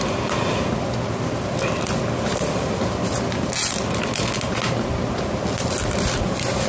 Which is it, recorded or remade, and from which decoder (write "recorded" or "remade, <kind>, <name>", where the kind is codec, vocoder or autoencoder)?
recorded